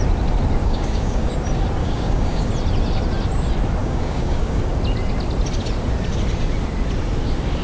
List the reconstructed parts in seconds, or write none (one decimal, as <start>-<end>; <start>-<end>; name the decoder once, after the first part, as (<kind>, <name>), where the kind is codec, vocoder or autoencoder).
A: 0.6-1.3 (codec, DAC); 1.8-2.5; 3.8-4.6